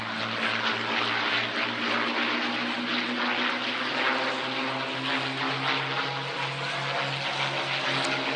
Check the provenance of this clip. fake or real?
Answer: real